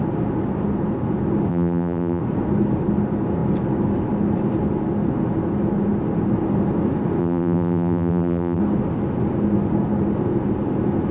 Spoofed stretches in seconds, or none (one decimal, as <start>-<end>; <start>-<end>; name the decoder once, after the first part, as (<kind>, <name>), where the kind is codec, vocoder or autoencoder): 1.5-2.2 (vocoder, BigVGAN v2); 7.2-8.6